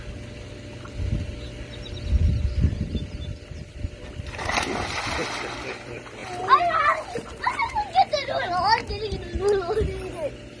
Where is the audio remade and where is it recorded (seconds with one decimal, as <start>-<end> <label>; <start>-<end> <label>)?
0.0-10.6 recorded